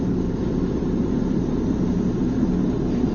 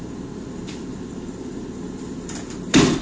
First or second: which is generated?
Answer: second